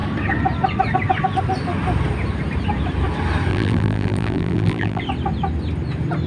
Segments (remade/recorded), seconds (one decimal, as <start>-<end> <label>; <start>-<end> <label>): 0.0-3.5 recorded; 3.5-5.0 remade; 5.0-6.3 recorded